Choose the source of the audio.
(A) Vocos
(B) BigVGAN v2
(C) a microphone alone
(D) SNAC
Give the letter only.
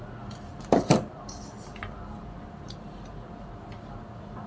C